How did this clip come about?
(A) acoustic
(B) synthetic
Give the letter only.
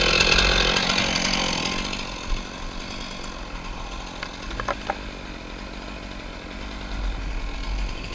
A